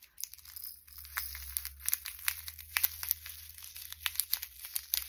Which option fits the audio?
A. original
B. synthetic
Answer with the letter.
A